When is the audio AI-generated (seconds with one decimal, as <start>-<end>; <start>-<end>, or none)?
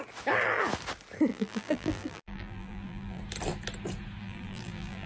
1.3-3.2; 4.2-5.1